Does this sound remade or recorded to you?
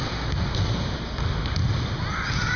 recorded